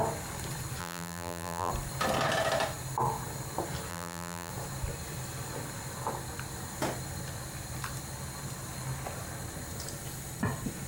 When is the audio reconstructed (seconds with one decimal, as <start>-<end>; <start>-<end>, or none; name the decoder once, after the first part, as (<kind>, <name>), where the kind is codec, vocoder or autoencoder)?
0.8-1.7 (vocoder, BigVGAN v2); 3.9-4.5